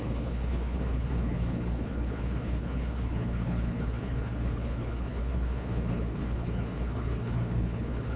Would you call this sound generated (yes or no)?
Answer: yes